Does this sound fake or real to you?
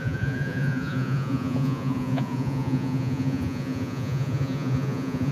fake